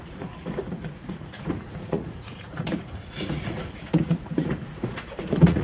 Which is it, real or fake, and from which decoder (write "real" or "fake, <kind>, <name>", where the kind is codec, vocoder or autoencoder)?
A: fake, vocoder, Vocos